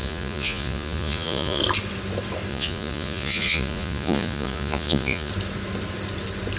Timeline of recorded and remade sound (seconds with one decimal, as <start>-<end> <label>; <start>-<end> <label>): 0.0-1.6 remade; 1.6-2.5 recorded; 2.5-5.3 remade; 5.3-6.6 recorded